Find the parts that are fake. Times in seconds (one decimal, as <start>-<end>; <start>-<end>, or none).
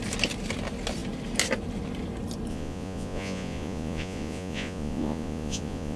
2.5-6.0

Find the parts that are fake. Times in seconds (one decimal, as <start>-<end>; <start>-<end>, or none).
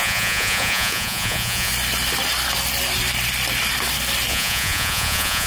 0.0-1.7; 4.3-5.5